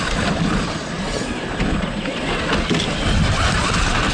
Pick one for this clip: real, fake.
real